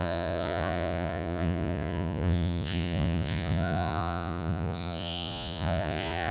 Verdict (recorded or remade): remade